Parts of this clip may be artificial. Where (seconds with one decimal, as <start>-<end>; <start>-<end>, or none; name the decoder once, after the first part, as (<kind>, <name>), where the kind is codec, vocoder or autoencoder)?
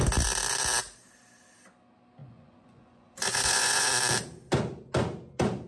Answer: 2.2-3.9 (vocoder, Vocos)